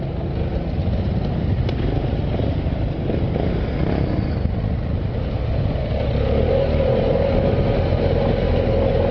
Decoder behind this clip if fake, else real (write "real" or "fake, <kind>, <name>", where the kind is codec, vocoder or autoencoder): real